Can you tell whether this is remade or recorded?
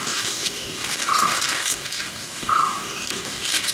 remade